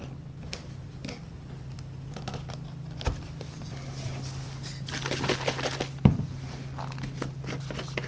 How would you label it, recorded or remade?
recorded